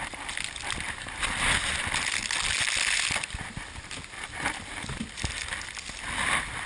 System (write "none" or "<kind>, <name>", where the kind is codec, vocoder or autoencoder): none